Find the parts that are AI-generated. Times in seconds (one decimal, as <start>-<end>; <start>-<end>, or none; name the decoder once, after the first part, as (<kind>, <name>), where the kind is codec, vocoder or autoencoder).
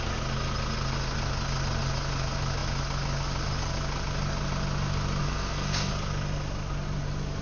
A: 5.2-5.9 (codec, SNAC)